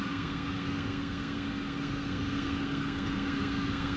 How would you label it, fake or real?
fake